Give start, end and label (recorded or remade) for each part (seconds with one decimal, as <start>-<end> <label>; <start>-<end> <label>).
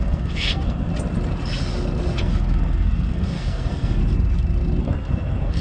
0.0-0.9 remade; 0.9-2.2 recorded; 2.2-4.0 remade; 4.0-4.8 recorded; 4.8-5.6 remade